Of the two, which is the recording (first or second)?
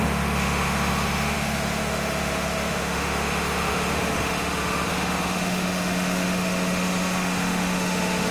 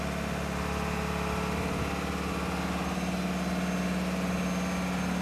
second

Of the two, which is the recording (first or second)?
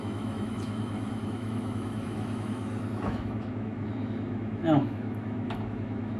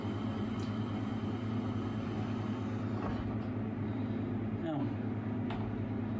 second